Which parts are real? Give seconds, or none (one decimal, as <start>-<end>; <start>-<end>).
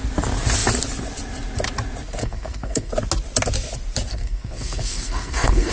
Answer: 0.0-2.2; 2.9-4.1